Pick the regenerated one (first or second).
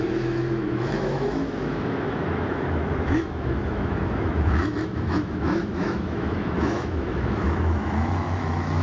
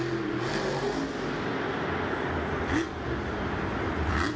first